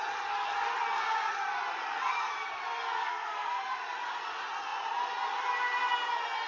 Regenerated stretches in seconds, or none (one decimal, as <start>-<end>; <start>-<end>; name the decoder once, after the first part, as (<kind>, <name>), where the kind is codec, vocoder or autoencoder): 3.0-3.6 (codec, SNAC)